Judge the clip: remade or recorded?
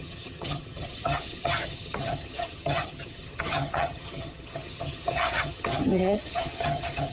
remade